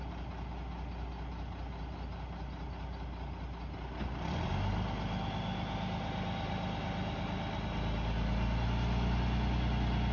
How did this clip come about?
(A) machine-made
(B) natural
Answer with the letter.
B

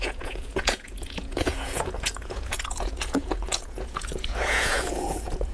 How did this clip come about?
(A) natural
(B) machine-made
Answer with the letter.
B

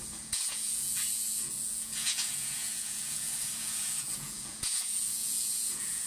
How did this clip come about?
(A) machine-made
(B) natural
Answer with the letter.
A